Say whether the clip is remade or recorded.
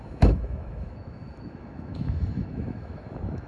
remade